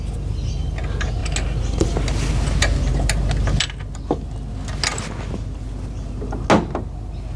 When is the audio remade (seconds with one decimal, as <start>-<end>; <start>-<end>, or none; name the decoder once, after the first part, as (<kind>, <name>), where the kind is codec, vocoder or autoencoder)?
none